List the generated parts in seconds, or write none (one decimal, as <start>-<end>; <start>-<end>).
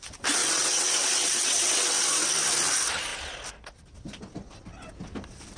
0.4-2.1